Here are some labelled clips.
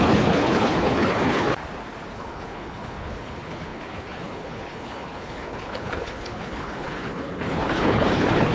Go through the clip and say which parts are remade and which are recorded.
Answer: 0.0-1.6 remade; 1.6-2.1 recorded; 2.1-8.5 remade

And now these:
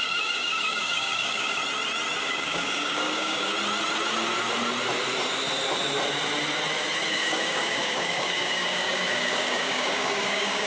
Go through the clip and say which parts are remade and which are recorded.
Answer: 0.0-1.6 remade; 1.6-2.2 recorded; 2.2-3.5 remade; 3.5-7.1 recorded; 7.1-10.7 remade

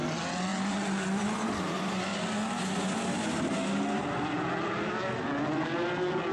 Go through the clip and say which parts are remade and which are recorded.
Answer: 0.0-6.3 recorded